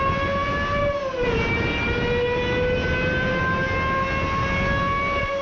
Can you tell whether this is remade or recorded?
recorded